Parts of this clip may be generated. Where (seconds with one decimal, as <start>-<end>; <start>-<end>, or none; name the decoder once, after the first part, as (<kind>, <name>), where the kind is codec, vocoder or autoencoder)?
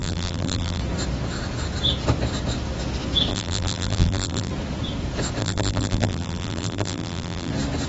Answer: 0.0-0.8 (vocoder, BigVGAN v2); 3.3-4.5; 5.4-7.5